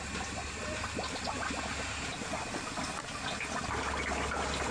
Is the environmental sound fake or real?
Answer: real